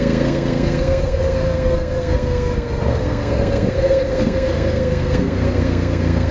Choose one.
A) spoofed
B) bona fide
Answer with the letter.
A